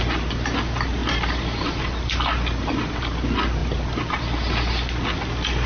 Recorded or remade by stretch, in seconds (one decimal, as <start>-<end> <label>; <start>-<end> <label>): 0.0-1.0 recorded; 1.0-1.8 remade; 1.8-3.6 recorded; 3.6-4.2 remade; 4.2-5.7 recorded